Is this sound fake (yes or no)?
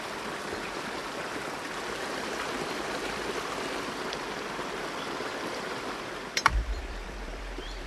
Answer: yes